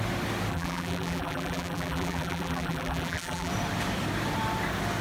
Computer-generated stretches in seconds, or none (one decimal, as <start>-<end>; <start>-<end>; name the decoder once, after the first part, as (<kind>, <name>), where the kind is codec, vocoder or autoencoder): 0.5-3.5 (vocoder, BigVGAN v2)